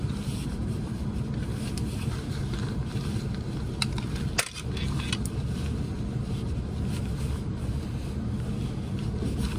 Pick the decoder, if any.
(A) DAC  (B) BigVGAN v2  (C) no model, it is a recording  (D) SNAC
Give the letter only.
C